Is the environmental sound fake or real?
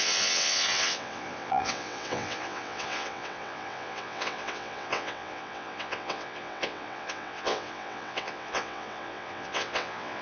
fake